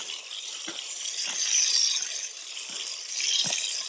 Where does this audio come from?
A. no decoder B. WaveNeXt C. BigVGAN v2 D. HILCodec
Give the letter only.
A